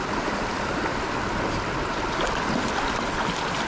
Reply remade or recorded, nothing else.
recorded